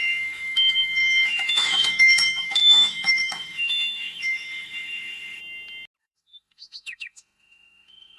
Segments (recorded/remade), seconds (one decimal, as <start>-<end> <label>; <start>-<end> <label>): 0.0-5.4 remade; 5.4-6.0 recorded; 6.0-8.2 remade